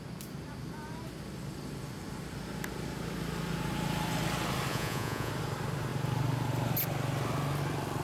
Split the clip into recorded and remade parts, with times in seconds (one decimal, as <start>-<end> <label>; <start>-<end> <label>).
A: 0.0-4.7 recorded; 4.7-5.3 remade; 5.3-8.0 recorded